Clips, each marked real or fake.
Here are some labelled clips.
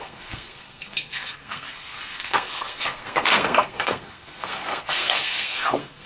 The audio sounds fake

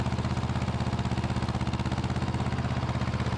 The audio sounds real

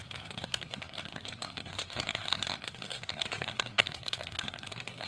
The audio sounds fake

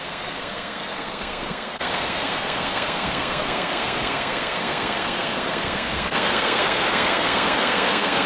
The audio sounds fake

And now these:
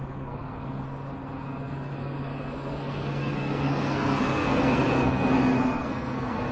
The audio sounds fake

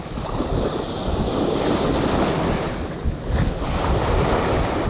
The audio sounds real